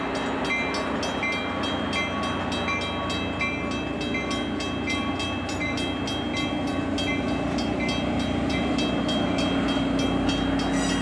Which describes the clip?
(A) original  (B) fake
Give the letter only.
A